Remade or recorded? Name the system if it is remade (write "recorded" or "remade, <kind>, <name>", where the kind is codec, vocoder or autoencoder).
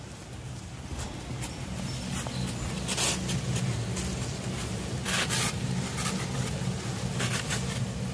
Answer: recorded